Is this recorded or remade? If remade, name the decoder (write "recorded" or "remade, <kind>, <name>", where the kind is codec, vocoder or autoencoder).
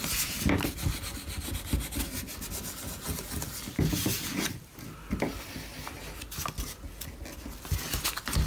recorded